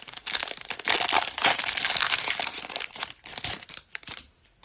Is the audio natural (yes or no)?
yes